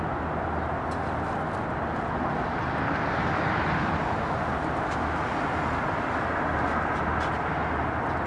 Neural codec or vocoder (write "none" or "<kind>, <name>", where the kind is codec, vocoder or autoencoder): none